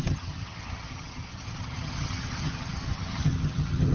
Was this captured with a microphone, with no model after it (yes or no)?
no